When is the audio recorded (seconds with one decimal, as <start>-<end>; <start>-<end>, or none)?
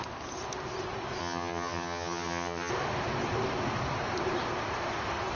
0.0-1.2; 2.7-5.4